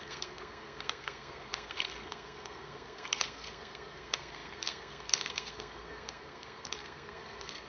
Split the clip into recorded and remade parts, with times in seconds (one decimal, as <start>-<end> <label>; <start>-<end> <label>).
0.0-7.7 remade